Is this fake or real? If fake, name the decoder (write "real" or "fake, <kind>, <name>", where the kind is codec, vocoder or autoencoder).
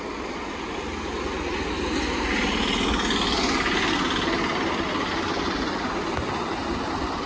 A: real